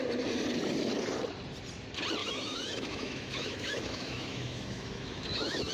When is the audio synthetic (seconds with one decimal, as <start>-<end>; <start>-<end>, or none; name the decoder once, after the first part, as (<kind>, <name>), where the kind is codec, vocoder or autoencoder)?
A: 2.2-5.7 (autoencoder, DAC-VAE)